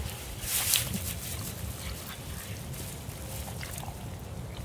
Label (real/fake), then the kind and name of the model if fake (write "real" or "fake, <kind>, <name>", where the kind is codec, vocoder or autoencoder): real